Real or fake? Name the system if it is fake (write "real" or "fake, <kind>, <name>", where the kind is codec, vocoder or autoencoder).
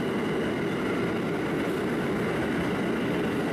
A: real